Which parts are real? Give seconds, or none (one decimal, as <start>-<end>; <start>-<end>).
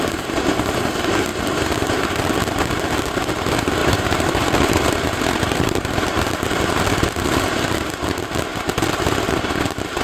0.0-3.8; 6.2-8.5; 9.1-10.0